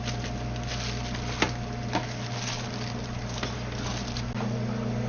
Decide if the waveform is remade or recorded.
recorded